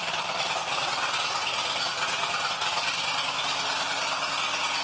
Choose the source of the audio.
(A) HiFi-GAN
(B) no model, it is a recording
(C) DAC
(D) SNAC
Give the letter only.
B